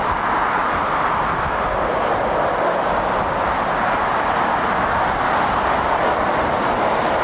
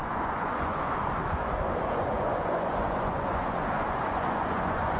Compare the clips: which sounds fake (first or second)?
second